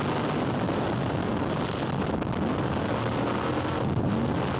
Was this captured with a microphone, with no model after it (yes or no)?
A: yes